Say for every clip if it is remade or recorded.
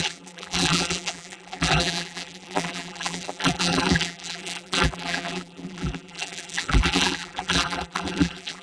remade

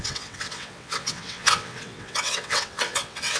remade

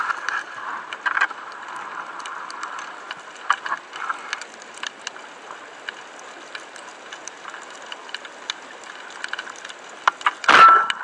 recorded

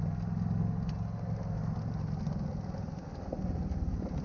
recorded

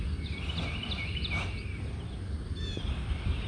recorded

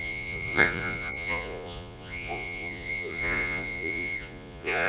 remade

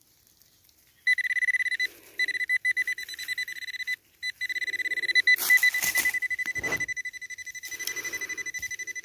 recorded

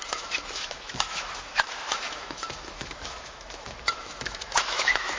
remade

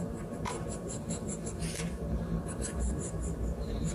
remade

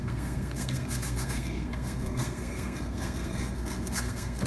remade